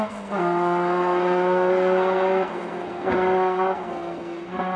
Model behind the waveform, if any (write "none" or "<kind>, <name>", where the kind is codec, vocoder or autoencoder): codec, SNAC